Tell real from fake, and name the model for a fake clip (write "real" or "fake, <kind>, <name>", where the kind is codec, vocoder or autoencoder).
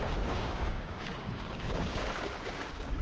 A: fake, codec, DAC